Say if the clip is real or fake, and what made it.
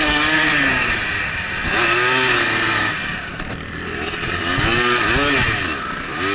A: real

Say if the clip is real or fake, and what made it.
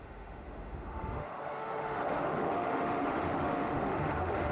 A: fake, autoencoder, DAC-VAE